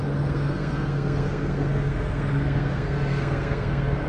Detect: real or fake fake